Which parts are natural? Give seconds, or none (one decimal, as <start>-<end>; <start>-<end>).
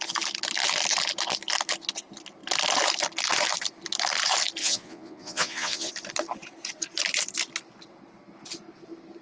0.0-4.6; 5.9-9.2